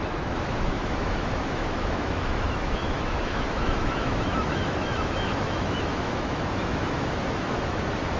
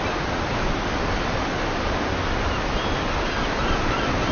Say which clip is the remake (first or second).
first